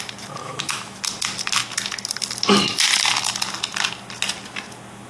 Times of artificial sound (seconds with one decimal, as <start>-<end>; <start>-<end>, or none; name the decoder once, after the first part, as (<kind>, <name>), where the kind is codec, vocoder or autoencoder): 0.4-1.0 (autoencoder, DAC-VAE)